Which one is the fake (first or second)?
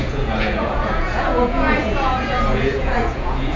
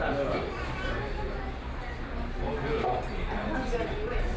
first